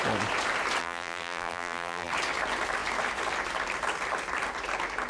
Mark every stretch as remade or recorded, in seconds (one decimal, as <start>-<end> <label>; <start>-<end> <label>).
0.0-0.8 recorded; 0.8-2.1 remade; 2.1-5.1 recorded